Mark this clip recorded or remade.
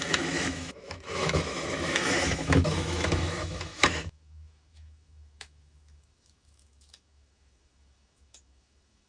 remade